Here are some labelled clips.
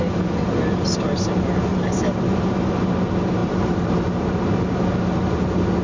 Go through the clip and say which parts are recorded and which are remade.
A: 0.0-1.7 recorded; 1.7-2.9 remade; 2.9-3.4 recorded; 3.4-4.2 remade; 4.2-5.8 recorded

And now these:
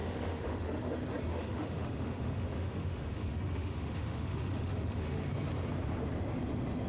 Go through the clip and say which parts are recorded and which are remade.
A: 0.0-0.8 remade; 0.8-1.3 recorded; 1.3-5.3 remade; 5.3-6.9 recorded